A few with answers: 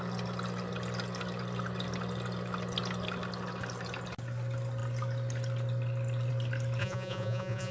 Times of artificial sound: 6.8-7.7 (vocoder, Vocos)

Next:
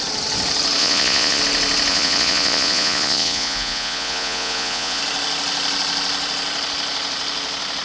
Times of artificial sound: 0.8-1.4 (vocoder, Vocos); 1.9-5.0

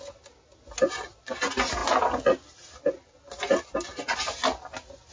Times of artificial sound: none

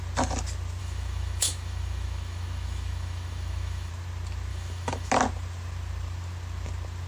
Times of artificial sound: 0.8-3.9 (autoencoder, DAC-VAE); 4.5-5.1

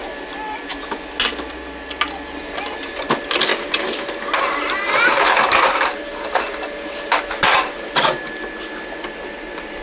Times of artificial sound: 3.5-8.2 (vocoder, BigVGAN v2)

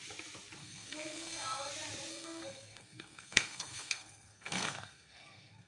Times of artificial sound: 0.6-1.7 (codec, SNAC); 2.1-5.7

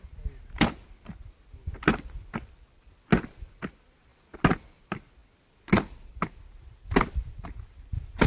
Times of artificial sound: none